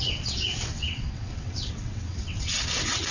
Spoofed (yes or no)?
yes